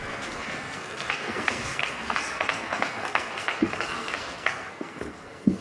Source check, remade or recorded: remade